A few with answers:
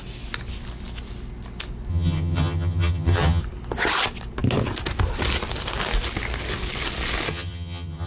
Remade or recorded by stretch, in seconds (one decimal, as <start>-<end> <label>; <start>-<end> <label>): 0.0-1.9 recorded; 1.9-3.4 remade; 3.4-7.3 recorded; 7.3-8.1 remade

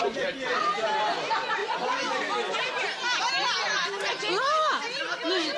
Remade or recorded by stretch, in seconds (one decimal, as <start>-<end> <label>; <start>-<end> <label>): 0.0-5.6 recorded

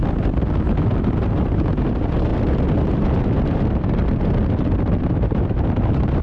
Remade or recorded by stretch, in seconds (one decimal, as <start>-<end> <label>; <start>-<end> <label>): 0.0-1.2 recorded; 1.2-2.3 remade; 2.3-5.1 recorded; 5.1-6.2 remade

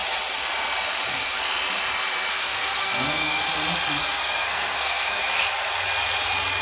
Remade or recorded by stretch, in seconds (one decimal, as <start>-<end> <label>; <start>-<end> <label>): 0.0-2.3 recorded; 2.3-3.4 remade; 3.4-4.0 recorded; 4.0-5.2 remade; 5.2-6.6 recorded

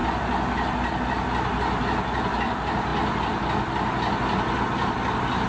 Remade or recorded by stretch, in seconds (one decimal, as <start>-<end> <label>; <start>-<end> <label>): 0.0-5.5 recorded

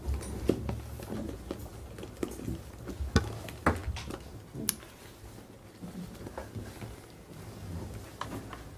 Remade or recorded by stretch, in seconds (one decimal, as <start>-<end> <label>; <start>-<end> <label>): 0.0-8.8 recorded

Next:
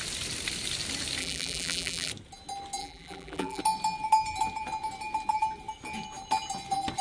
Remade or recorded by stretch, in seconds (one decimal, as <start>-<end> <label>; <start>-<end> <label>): 0.0-1.2 recorded; 1.2-2.1 remade; 2.1-2.8 recorded; 2.8-3.6 remade; 3.6-7.0 recorded

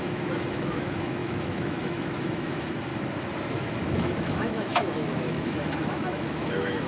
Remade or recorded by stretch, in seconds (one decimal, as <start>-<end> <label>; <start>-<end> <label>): 0.0-2.9 remade; 2.9-3.5 recorded; 3.5-6.9 remade